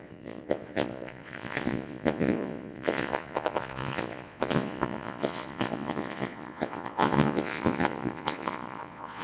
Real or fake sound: fake